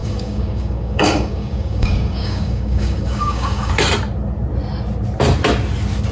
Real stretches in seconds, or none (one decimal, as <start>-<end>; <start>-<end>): 3.7-6.1